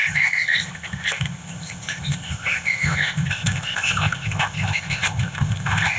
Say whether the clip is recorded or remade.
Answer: remade